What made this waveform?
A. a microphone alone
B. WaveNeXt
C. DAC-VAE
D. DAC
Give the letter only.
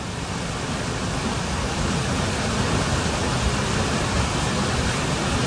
A